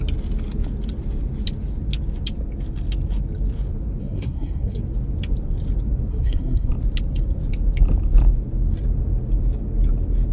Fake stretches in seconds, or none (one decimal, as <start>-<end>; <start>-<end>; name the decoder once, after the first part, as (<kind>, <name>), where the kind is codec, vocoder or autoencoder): 4.0-4.8 (codec, SNAC); 6.1-6.7